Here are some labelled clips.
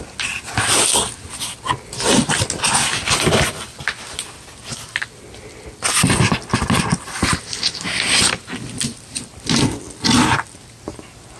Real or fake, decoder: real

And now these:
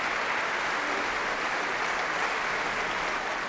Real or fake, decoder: real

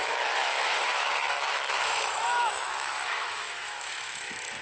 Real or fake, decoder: fake, autoencoder, DAC-VAE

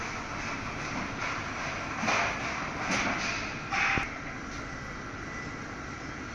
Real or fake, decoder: real